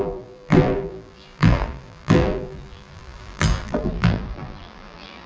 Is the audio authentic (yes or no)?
no